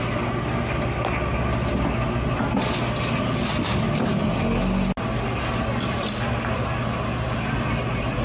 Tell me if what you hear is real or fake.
real